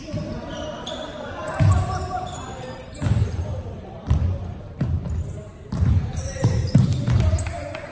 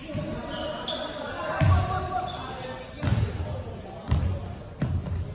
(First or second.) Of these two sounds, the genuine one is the second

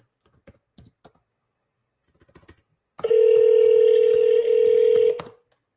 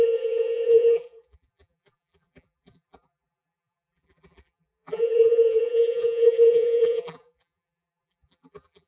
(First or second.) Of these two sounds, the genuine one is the first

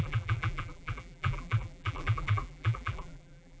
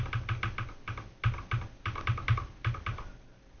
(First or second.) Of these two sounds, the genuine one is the second